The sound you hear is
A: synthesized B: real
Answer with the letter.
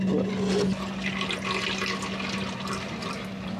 B